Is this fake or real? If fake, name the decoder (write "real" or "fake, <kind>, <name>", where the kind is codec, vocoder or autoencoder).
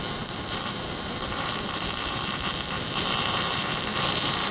fake, vocoder, BigVGAN v2